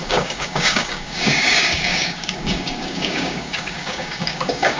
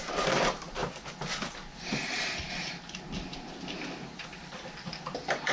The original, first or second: second